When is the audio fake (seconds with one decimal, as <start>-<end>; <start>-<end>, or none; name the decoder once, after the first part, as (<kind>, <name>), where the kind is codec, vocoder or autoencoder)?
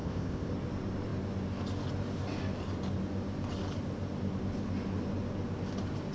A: 0.0-0.5 (codec, ZipCodec)